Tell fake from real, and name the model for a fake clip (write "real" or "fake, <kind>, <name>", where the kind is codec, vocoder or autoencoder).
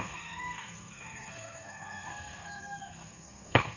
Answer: fake, codec, SNAC